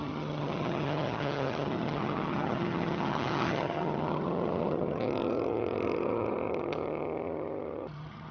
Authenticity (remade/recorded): remade